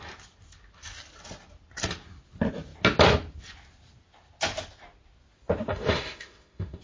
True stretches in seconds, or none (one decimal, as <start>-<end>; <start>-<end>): 0.0-5.7